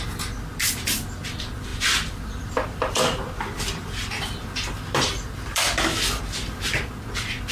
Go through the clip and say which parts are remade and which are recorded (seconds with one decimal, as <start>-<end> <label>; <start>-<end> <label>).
0.0-1.7 recorded; 1.7-6.2 remade; 6.2-7.5 recorded